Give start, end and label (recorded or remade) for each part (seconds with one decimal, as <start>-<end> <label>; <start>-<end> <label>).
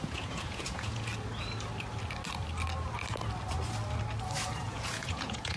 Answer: 0.0-1.1 remade; 1.1-4.5 recorded; 4.5-5.6 remade